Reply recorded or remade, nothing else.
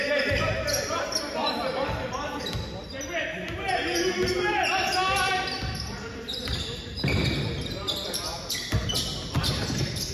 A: recorded